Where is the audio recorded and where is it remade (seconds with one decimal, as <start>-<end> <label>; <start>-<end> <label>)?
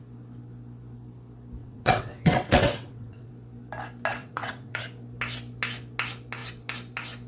0.0-1.6 recorded; 1.6-3.3 remade; 3.3-4.2 recorded; 4.2-4.8 remade; 4.8-7.3 recorded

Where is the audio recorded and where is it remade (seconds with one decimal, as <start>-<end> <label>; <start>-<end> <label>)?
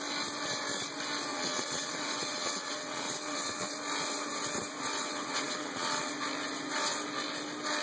0.0-1.3 recorded; 1.3-3.7 remade; 3.7-5.0 recorded; 5.0-6.1 remade; 6.1-7.8 recorded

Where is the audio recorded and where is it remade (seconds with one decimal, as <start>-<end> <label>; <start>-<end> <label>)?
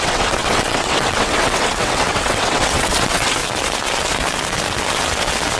0.0-3.4 remade; 3.4-5.6 recorded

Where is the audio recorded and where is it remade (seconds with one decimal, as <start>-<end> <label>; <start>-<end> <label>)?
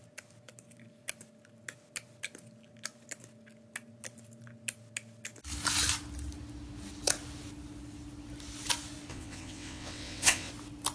0.0-9.1 recorded; 9.1-10.5 remade; 10.5-10.9 recorded